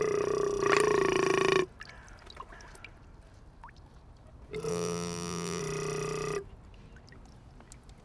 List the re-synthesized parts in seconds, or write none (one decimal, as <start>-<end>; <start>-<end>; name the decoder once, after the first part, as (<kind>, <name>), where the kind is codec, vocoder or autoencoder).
4.7-5.6 (vocoder, BigVGAN v2)